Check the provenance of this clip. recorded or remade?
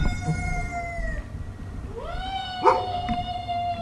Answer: recorded